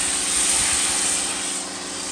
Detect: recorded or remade recorded